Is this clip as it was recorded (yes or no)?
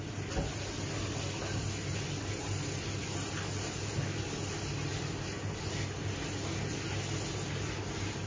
yes